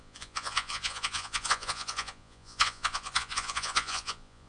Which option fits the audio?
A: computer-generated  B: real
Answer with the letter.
A